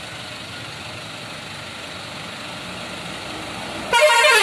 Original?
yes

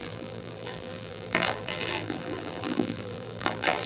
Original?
no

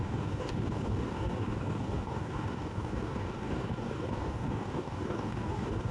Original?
no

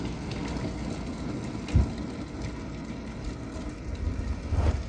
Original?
yes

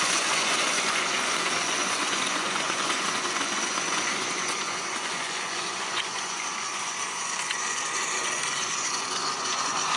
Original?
no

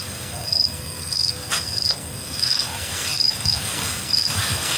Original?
no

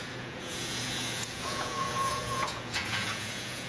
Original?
no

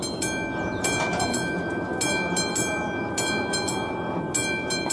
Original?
yes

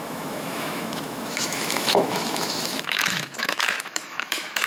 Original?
no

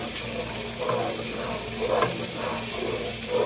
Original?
yes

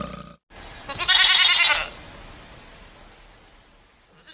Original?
yes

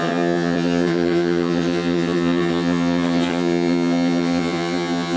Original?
no